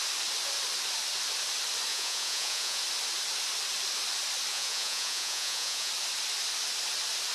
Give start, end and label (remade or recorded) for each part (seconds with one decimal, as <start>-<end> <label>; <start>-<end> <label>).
0.0-1.9 recorded; 1.9-2.8 remade; 2.8-4.5 recorded; 4.5-5.9 remade; 5.9-7.3 recorded